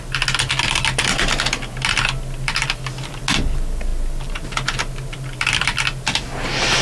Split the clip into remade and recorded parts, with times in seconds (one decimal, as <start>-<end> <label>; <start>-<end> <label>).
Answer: 0.0-6.8 recorded